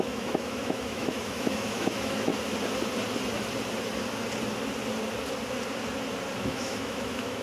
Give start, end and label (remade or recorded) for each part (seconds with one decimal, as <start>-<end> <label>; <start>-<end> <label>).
0.0-2.3 remade; 2.3-6.4 recorded; 6.4-7.4 remade